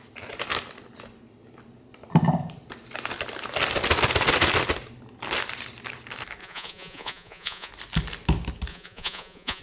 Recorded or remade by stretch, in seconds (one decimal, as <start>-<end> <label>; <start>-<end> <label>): 0.0-6.4 recorded; 6.4-7.7 remade; 7.7-8.7 recorded; 8.7-9.6 remade